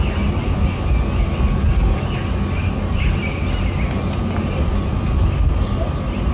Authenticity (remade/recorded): recorded